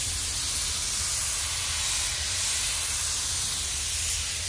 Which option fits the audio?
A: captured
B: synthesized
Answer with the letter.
A